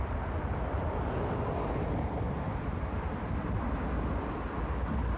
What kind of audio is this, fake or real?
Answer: real